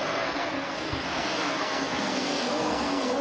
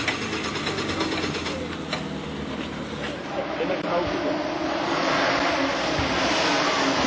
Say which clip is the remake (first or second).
first